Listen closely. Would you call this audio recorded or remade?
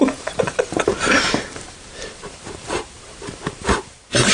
remade